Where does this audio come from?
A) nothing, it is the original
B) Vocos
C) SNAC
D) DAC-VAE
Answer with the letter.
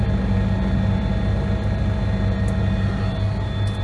A